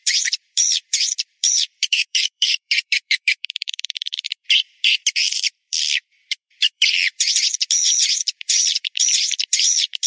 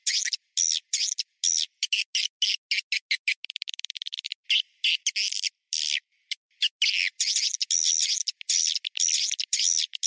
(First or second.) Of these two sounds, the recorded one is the second